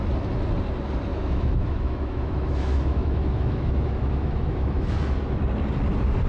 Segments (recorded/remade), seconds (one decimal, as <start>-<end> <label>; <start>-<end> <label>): 0.0-1.1 recorded; 1.1-4.9 remade; 4.9-6.3 recorded